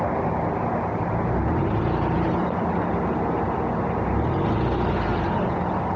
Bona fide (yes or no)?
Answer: yes